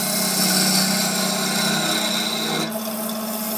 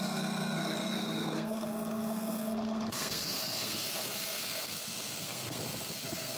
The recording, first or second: first